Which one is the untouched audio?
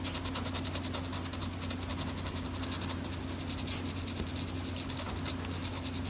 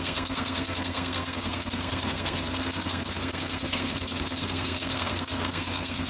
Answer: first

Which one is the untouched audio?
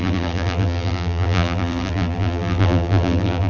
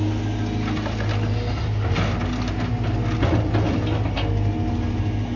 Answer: second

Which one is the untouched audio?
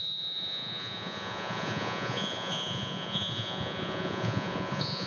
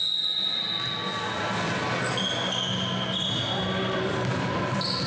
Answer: second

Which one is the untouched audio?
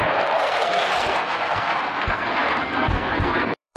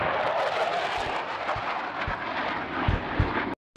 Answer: second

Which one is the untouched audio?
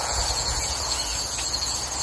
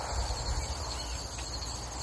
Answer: second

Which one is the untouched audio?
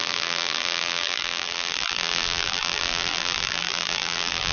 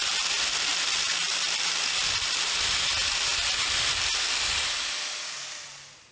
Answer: second